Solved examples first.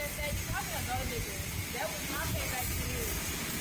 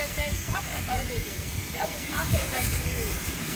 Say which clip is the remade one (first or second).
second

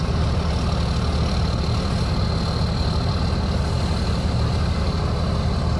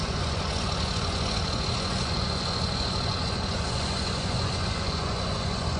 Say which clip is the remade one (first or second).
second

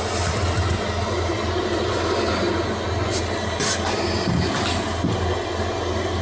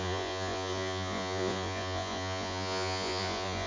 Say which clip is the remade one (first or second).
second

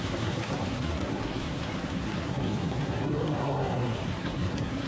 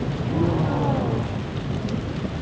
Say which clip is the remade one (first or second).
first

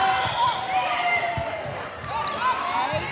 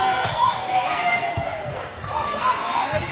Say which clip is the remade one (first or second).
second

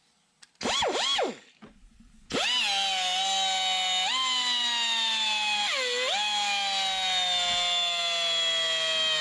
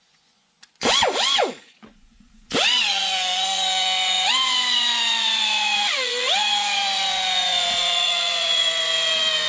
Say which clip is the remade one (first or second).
second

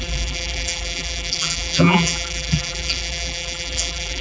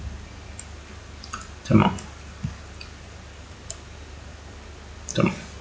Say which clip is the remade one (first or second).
first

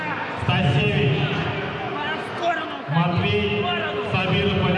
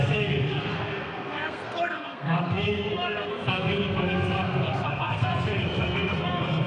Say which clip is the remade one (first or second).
second